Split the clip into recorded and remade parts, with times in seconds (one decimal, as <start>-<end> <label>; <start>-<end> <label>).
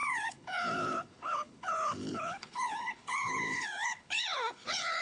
0.0-5.0 remade